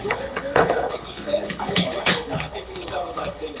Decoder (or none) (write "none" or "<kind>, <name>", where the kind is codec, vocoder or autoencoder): codec, HILCodec